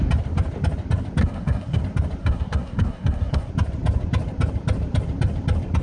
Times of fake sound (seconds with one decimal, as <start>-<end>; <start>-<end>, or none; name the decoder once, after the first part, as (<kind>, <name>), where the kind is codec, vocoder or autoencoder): 1.2-1.8 (codec, SNAC); 2.2-3.5